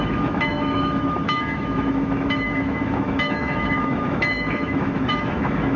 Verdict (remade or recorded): remade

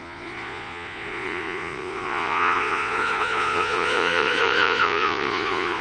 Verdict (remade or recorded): remade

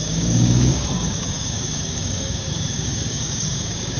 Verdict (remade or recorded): remade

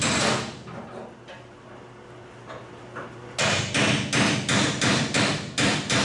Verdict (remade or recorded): recorded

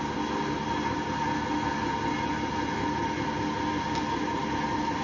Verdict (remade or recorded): recorded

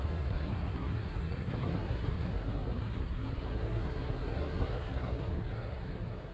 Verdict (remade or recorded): remade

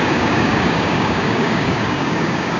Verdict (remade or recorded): remade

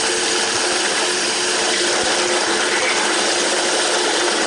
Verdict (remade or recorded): recorded